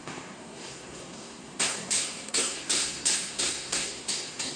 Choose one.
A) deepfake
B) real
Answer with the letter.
A